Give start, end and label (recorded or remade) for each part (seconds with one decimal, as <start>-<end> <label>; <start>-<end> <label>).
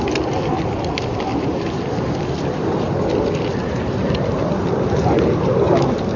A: 0.0-6.2 recorded